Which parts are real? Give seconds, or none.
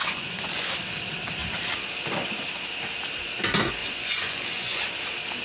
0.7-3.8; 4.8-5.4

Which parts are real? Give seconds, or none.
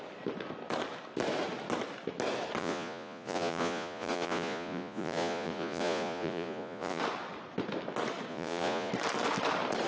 0.0-2.6; 7.0-8.3; 8.9-9.9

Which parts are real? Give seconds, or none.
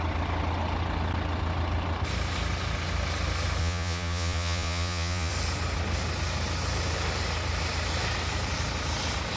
0.0-3.6; 5.3-9.4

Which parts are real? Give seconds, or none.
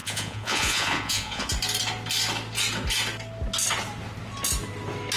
1.5-5.2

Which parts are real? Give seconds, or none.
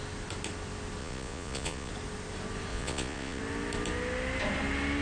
0.0-1.0; 1.9-2.7; 3.4-5.0